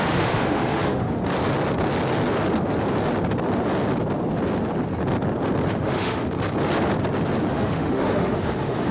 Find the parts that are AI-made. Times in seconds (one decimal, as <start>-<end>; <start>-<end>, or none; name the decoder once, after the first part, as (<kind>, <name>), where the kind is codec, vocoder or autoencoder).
0.0-1.2 (autoencoder, DAC-VAE); 5.7-6.2; 7.5-8.9